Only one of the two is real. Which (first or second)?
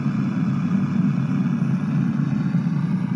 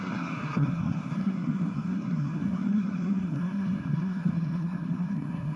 first